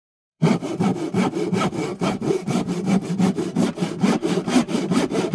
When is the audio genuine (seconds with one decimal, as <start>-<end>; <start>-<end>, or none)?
0.9-4.1